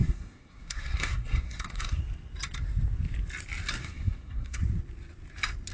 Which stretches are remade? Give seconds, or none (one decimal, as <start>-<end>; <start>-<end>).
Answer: 0.0-2.0; 3.8-4.6